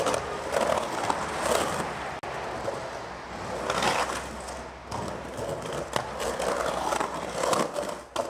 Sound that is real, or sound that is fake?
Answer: real